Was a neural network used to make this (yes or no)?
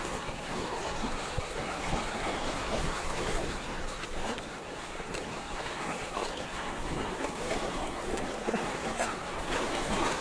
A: yes